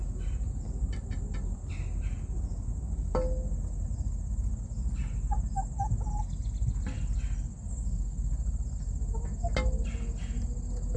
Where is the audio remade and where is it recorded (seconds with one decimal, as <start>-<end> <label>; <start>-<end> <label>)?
0.0-11.0 recorded